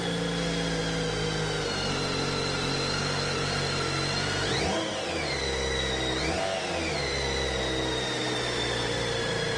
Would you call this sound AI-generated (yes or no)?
no